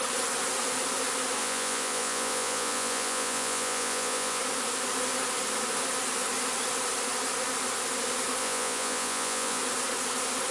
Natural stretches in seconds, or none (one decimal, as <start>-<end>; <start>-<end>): 0.0-1.4; 4.4-8.4; 9.6-10.5